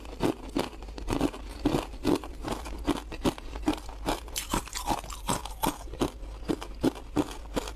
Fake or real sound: real